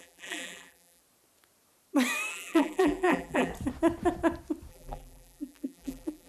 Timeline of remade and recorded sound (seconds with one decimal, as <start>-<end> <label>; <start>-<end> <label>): 0.0-1.0 remade; 1.0-2.3 recorded; 2.3-3.5 remade; 3.5-4.7 recorded; 4.7-6.3 remade